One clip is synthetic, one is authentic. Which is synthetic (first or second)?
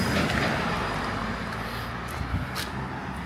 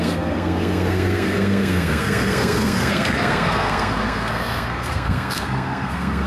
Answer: second